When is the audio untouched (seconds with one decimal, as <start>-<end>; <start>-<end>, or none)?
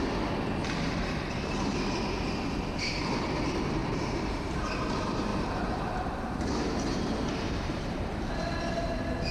0.0-3.8; 4.4-5.3; 8.3-9.3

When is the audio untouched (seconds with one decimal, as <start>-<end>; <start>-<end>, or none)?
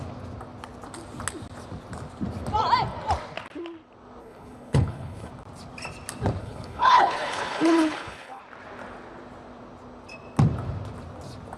0.0-4.2; 5.3-6.4; 8.4-11.6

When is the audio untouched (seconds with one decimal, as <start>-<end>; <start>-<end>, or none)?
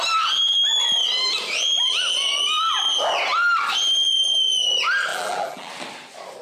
0.0-5.1; 5.7-6.4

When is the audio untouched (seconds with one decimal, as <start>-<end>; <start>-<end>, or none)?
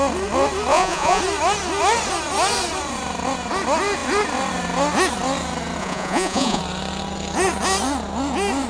0.0-0.7; 1.2-5.8; 6.6-8.7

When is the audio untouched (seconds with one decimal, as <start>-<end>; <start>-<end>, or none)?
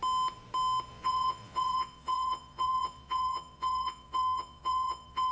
0.0-0.9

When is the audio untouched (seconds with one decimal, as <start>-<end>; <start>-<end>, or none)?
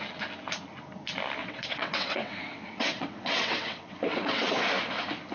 0.0-1.4; 4.6-5.3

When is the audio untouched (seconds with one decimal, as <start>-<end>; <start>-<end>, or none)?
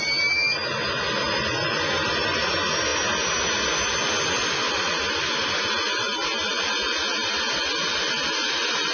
0.0-8.9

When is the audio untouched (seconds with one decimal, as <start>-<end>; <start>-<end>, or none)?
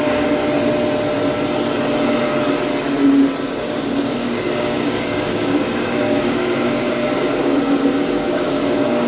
0.4-3.6